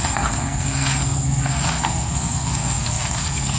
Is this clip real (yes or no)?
no